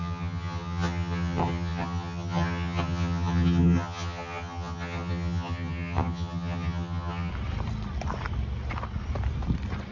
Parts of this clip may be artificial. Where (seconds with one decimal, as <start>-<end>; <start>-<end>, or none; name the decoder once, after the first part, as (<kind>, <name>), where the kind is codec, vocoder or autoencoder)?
0.0-7.3 (vocoder, HiFi-GAN)

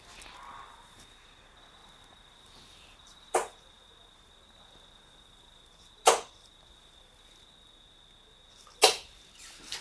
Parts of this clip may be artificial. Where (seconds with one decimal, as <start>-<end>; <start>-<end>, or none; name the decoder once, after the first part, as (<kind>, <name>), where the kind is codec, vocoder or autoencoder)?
1.8-4.6 (vocoder, BigVGAN v2)